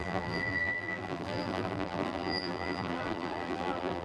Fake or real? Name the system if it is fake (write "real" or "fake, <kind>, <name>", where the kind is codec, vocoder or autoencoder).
fake, vocoder, BigVGAN v2